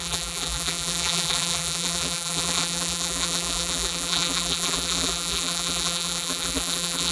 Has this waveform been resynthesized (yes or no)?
yes